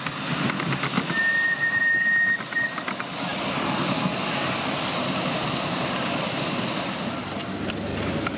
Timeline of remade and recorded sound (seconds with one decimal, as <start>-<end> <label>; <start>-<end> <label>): 0.0-8.4 recorded